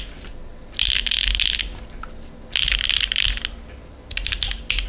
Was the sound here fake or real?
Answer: real